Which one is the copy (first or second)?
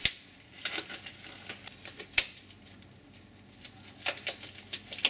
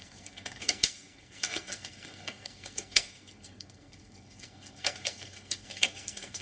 second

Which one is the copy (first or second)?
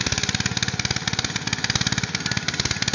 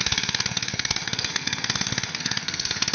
second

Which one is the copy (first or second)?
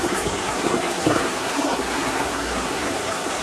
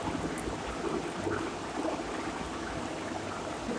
first